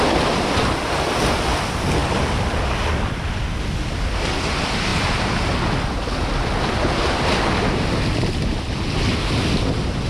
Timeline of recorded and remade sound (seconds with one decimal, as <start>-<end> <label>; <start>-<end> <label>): 0.0-10.1 recorded